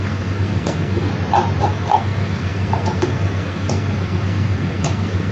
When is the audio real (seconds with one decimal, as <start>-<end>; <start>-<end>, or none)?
1.1-1.6